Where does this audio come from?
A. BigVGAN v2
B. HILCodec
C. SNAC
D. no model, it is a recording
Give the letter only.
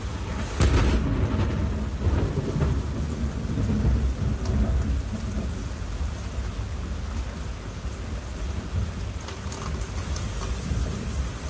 D